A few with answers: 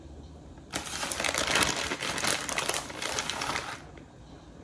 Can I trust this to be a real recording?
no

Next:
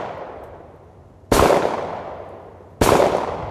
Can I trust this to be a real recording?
yes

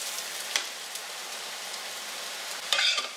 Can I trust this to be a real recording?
no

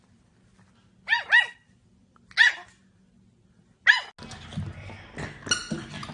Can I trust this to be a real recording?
yes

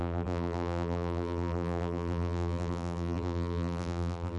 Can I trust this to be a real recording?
no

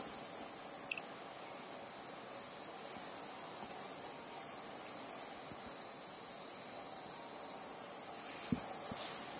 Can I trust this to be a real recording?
yes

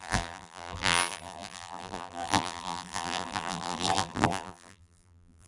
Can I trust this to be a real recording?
no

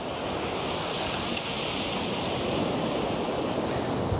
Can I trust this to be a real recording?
yes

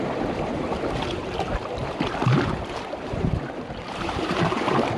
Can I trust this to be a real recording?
no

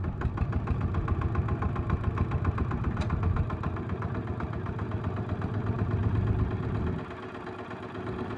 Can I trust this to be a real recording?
yes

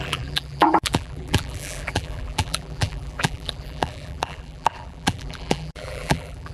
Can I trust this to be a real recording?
no